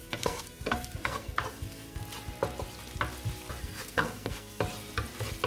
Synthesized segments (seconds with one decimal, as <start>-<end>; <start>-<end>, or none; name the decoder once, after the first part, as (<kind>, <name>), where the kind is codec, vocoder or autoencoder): 0.0-2.0 (codec, SNAC); 3.6-4.6